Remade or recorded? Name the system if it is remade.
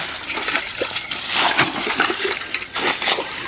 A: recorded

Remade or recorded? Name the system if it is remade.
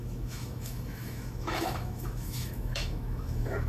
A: remade, autoencoder, DAC-VAE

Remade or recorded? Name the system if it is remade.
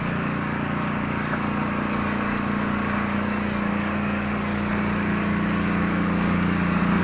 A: remade, codec, DAC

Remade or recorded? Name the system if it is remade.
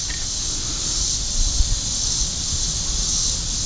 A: recorded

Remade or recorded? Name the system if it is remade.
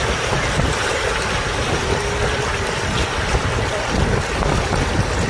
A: recorded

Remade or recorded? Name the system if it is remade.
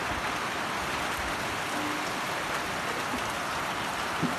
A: recorded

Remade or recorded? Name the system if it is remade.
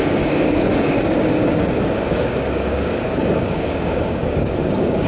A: remade, codec, DAC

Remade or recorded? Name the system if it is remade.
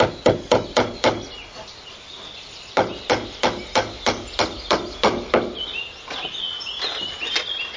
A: recorded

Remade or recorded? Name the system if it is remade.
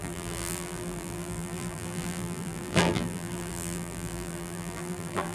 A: remade, vocoder, BigVGAN v2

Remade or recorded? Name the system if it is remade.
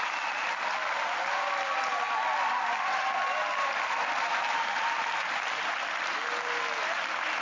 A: recorded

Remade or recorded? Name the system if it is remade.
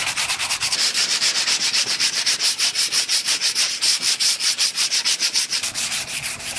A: remade, vocoder, BigVGAN v2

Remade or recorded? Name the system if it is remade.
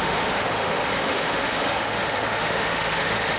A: remade, autoencoder, DAC-VAE